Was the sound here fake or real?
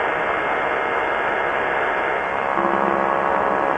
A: real